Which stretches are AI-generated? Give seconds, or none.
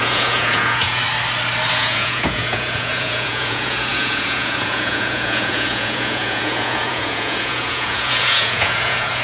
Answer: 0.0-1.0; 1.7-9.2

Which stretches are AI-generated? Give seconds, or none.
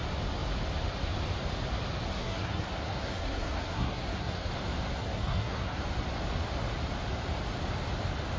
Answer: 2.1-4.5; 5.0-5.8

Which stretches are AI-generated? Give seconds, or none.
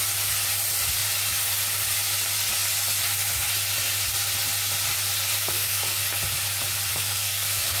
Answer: 5.4-6.0; 6.9-7.8